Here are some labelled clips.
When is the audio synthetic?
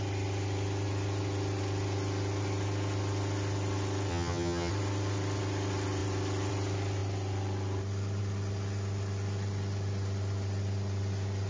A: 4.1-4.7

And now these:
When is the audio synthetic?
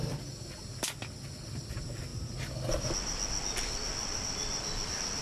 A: none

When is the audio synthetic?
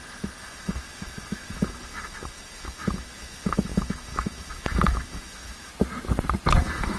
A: 0.0-5.7; 6.6-7.0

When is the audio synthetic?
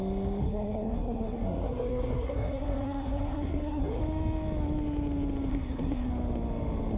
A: 0.4-4.0; 5.5-6.1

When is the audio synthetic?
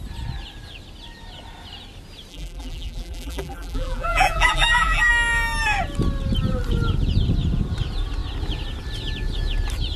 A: 2.3-5.1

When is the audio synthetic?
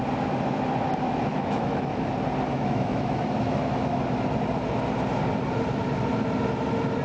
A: 1.3-2.1; 2.5-4.0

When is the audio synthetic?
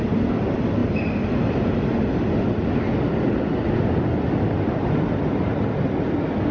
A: none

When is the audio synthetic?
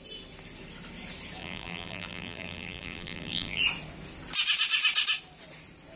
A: 1.4-3.6